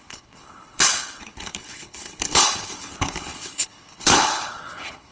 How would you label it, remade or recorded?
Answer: remade